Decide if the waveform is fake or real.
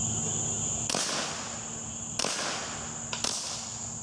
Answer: real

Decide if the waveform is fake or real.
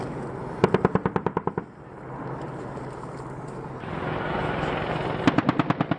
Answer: real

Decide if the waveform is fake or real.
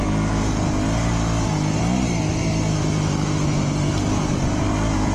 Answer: real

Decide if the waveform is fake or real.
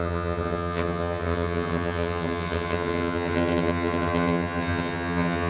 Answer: fake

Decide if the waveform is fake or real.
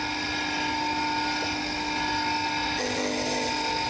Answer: real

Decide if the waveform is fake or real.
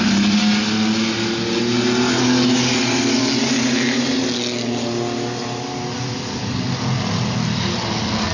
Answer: real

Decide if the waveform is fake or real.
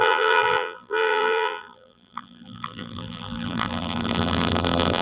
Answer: fake